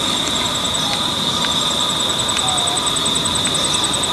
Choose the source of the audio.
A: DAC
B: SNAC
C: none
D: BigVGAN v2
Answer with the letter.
C